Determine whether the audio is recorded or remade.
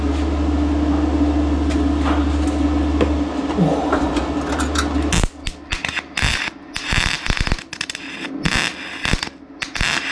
recorded